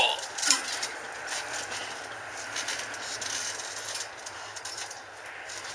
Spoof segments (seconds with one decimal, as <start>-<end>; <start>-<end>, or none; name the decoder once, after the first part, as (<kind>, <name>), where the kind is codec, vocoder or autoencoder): none